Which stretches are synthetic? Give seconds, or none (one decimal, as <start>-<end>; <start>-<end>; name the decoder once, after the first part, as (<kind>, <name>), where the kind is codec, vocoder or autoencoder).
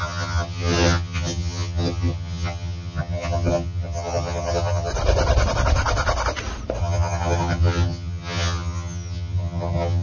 0.0-4.9 (vocoder, HiFi-GAN); 6.8-10.0